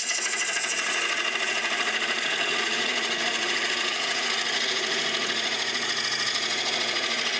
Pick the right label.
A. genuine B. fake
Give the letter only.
B